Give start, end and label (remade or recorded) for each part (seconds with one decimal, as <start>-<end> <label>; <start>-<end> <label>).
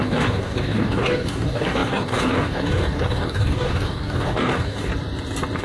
0.0-4.9 remade; 4.9-5.6 recorded